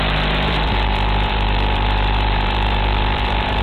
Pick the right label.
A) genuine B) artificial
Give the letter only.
B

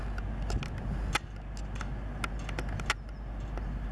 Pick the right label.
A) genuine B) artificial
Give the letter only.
A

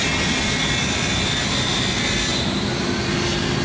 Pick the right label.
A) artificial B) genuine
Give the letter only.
B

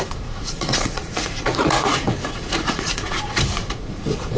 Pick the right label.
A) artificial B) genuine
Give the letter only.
A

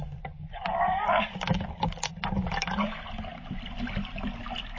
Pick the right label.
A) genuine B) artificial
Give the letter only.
A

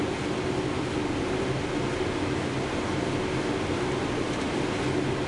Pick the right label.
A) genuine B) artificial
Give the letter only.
A